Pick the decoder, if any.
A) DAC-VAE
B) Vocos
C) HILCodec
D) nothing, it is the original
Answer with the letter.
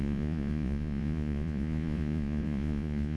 B